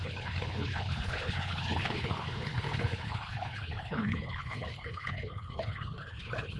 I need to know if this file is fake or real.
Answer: fake